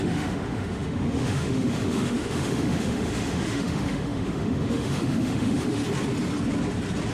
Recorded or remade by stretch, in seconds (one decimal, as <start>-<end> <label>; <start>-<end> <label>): 0.0-5.8 remade; 5.8-7.1 recorded

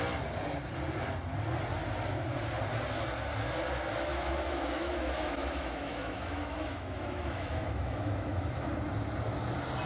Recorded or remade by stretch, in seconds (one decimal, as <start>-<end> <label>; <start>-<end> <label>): 0.0-4.1 recorded; 4.1-8.6 remade; 8.6-9.9 recorded

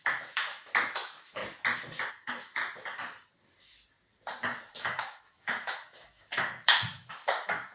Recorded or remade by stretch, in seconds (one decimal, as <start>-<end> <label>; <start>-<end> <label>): 0.0-1.4 remade; 1.4-2.1 recorded; 2.1-2.6 remade; 2.6-4.7 recorded; 4.7-7.7 remade

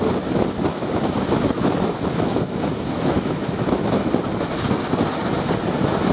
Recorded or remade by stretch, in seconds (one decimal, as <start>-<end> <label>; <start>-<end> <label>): 0.0-0.7 recorded; 0.7-4.1 remade; 4.1-6.1 recorded

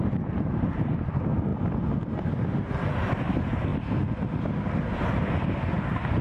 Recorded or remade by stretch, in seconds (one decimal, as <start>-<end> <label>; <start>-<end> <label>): 0.0-6.2 recorded

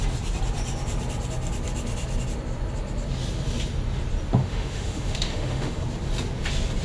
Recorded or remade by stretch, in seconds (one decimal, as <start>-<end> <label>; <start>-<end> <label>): 0.0-4.4 recorded; 4.4-5.8 remade; 5.8-6.8 recorded